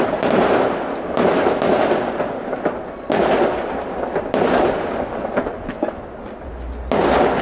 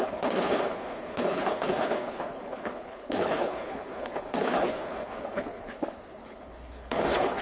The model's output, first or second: second